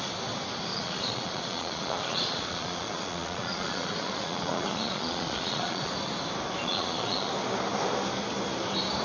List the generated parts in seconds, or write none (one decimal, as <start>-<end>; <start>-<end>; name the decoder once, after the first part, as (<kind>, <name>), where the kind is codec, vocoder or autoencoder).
0.7-5.9 (vocoder, Vocos); 6.6-7.3